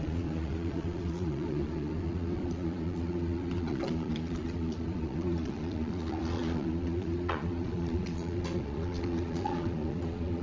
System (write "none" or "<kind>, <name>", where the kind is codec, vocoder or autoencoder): vocoder, Vocos